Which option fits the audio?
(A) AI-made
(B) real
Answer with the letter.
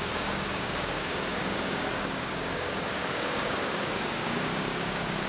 A